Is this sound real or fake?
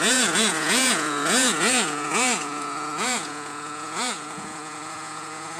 fake